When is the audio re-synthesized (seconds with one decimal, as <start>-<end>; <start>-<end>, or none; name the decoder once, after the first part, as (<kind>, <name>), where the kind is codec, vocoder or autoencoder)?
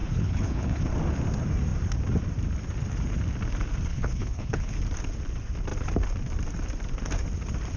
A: 0.0-0.8 (codec, HILCodec); 3.9-4.8